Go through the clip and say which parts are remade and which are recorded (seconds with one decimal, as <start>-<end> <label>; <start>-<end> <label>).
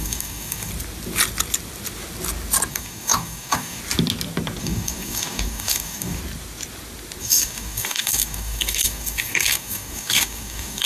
0.0-0.7 remade; 0.7-2.7 recorded; 2.7-3.8 remade; 3.8-4.6 recorded; 4.6-6.2 remade; 6.2-7.2 recorded; 7.2-10.9 remade